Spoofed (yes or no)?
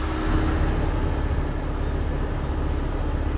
no